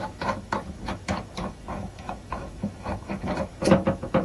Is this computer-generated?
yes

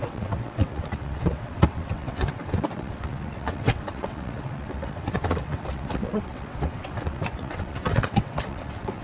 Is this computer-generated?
yes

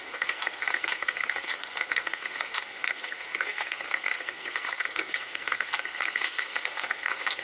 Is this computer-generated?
yes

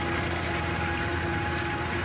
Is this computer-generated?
no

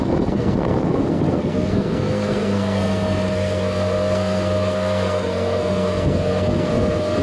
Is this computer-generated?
yes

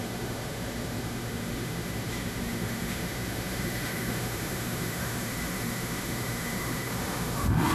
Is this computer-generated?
yes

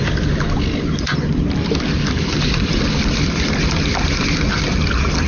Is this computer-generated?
no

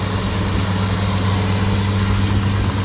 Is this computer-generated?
no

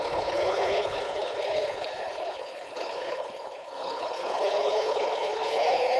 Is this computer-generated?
yes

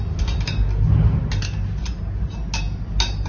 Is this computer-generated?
no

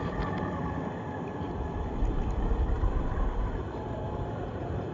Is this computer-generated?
no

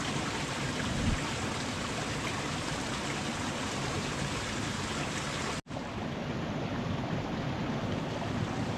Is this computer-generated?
no